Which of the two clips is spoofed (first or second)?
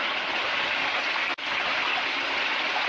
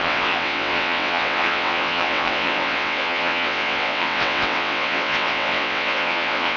second